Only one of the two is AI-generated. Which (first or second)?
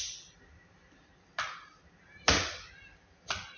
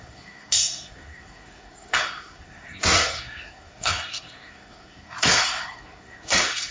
second